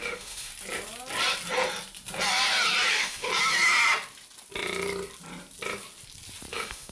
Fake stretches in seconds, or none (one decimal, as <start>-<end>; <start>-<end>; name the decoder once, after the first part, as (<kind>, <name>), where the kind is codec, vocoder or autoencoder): 0.0-0.5 (autoencoder, DAC-VAE); 2.9-3.3; 6.5-6.9